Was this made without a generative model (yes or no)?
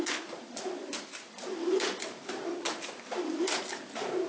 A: yes